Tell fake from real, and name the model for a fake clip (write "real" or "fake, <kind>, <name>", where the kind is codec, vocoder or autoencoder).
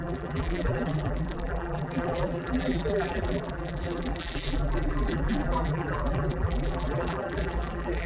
fake, vocoder, BigVGAN v2